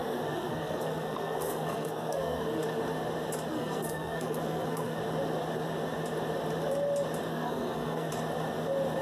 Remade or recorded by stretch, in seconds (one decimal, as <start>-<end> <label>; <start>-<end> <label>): 0.0-2.8 remade; 2.8-3.5 recorded; 3.5-5.0 remade; 5.0-7.3 recorded; 7.3-8.1 remade; 8.1-9.0 recorded